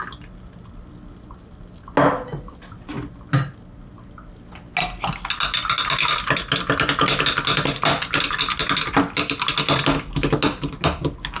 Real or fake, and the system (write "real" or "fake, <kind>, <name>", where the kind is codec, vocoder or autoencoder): real